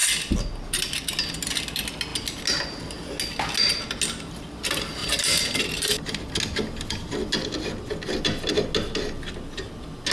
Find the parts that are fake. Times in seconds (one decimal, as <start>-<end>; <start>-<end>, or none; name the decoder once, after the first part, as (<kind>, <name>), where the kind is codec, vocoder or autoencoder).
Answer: none